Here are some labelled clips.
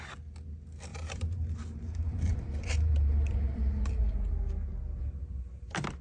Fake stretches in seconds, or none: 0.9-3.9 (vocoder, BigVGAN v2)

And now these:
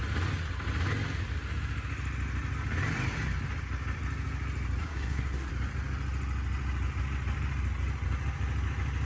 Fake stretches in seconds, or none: 4.8-5.5 (codec, SNAC)

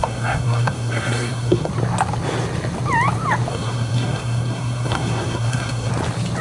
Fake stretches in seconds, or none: 0.0-1.7 (codec, SNAC); 3.5-5.9

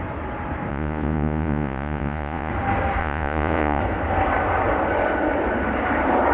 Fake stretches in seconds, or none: 0.7-2.5 (vocoder, Vocos); 3.0-3.8

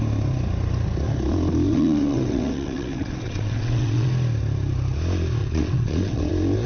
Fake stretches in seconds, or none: 1.7-4.1 (vocoder, WaveNeXt); 5.4-6.3